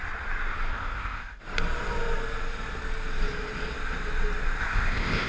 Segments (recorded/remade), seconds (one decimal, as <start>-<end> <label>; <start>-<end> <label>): 0.0-0.7 recorded; 0.7-1.4 remade; 1.4-4.6 recorded; 4.6-5.3 remade